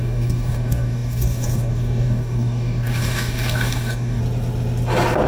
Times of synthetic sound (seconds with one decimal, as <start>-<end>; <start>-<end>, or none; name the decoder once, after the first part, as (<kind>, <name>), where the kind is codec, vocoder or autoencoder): 0.0-4.2 (codec, DAC)

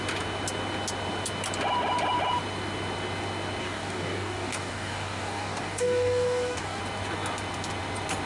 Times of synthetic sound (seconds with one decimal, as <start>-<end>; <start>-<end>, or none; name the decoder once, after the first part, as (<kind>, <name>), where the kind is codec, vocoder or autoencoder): 3.6-6.8 (codec, DAC)

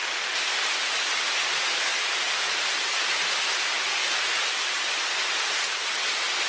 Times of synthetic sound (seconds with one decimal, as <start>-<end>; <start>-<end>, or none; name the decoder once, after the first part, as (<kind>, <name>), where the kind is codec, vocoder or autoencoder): none

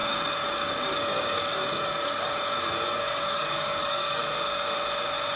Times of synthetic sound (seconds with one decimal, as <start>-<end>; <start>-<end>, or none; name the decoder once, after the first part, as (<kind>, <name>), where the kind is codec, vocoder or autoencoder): 0.0-4.2 (codec, DAC)

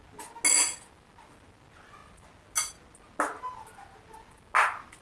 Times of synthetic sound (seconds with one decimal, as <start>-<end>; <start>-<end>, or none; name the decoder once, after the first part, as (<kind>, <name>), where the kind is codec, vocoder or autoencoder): none

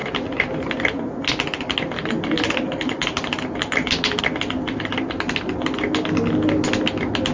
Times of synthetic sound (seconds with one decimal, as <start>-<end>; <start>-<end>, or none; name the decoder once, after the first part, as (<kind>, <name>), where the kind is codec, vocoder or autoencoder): none

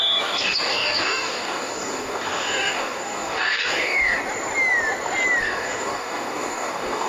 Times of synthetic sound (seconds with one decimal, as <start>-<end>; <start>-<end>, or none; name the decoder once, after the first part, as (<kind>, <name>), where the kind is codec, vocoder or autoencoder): 0.0-4.2 (codec, DAC); 5.4-7.1

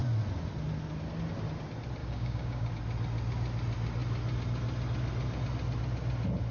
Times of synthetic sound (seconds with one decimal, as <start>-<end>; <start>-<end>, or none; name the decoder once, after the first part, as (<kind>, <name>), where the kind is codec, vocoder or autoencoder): 2.0-2.7 (codec, DAC)